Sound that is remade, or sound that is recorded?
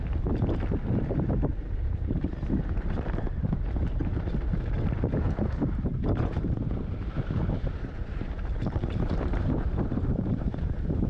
remade